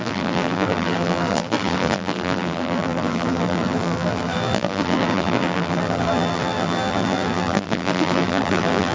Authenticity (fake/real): fake